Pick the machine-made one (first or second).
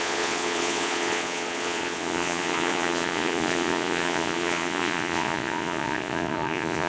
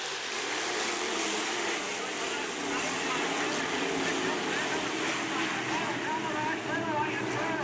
first